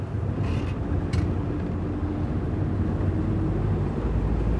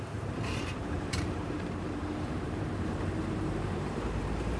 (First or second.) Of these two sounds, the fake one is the second